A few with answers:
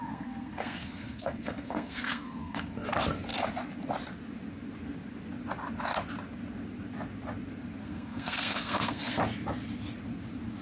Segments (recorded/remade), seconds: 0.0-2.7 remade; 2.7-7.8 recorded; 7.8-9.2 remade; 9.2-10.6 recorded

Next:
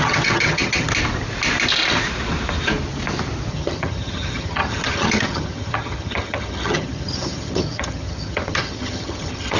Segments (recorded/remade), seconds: 0.0-0.9 remade; 0.9-3.5 recorded; 3.5-9.6 remade

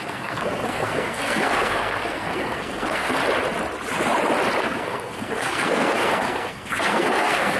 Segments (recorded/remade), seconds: 0.0-3.2 remade; 3.2-4.6 recorded; 4.6-7.6 remade

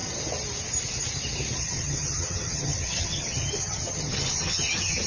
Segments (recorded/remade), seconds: 0.0-1.6 recorded; 1.6-5.1 remade

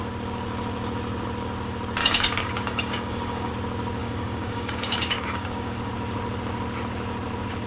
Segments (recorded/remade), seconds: 0.0-2.0 recorded; 2.0-3.5 remade; 3.5-4.0 recorded; 4.0-5.9 remade; 5.9-7.7 recorded

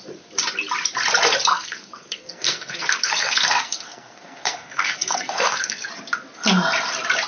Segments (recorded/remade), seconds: 0.0-1.5 recorded; 1.5-5.9 remade; 5.9-7.3 recorded

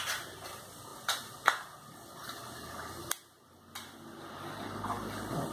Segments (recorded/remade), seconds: 0.0-5.5 recorded